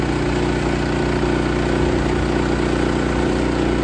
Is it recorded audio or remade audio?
recorded